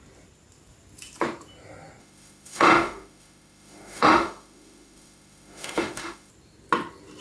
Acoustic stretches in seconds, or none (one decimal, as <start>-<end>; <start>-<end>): 0.0-2.0; 6.3-7.2